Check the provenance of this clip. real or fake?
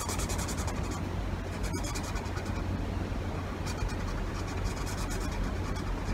real